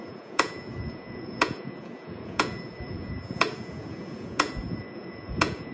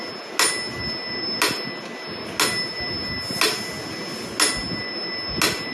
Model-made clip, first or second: first